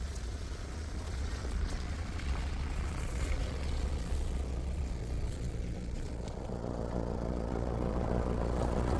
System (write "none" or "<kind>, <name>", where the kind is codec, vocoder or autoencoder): vocoder, Vocos